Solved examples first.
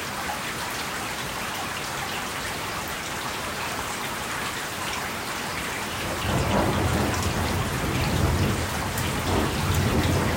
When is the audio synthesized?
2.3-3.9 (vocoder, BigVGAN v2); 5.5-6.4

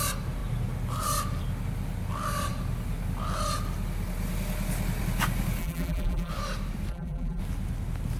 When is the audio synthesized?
5.6-6.3 (vocoder, BigVGAN v2); 6.9-7.4

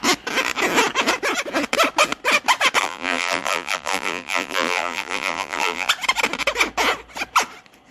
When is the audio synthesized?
2.8-5.9 (vocoder, BigVGAN v2)